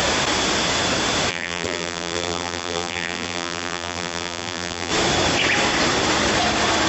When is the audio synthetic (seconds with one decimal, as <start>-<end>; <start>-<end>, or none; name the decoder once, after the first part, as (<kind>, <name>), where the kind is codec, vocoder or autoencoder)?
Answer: 1.3-4.9 (vocoder, BigVGAN v2)